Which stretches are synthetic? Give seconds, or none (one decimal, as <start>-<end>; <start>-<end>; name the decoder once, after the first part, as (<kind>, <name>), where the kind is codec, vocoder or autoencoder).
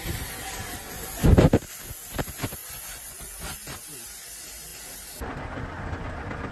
2.6-3.4 (vocoder, Vocos)